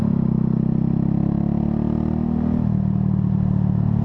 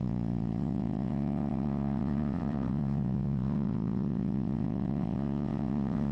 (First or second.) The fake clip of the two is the second